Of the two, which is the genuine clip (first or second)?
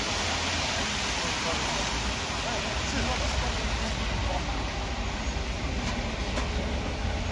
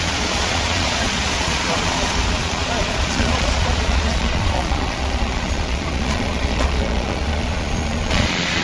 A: first